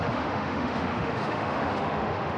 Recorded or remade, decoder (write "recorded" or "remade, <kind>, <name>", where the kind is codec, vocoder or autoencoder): remade, autoencoder, DAC-VAE